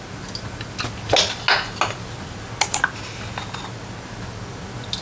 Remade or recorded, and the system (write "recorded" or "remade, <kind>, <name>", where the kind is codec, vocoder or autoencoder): recorded